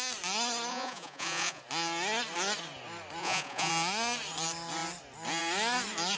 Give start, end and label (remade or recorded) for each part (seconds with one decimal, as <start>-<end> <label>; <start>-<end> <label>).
0.0-0.7 recorded; 0.7-1.6 remade; 1.6-3.2 recorded; 3.2-3.7 remade; 3.7-6.2 recorded